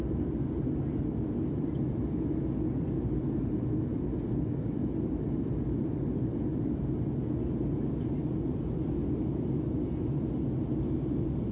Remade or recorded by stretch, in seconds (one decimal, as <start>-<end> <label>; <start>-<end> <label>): 0.0-11.5 recorded